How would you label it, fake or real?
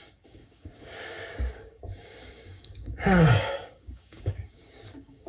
fake